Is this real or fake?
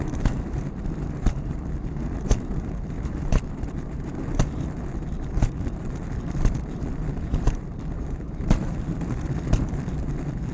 fake